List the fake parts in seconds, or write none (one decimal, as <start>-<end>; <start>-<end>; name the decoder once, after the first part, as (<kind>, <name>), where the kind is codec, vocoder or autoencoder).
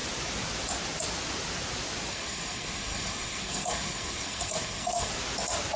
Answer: 2.1-5.1 (codec, SNAC)